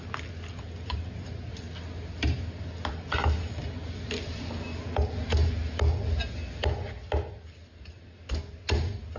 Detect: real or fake real